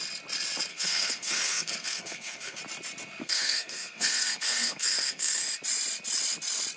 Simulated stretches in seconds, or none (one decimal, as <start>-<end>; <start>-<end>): 0.7-2.6; 3.2-5.4